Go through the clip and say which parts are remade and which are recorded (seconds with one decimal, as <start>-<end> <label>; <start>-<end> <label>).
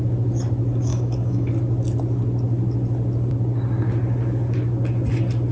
0.0-0.9 recorded; 0.9-1.5 remade; 1.5-5.5 recorded